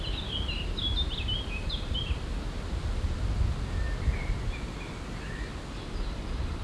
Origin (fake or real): real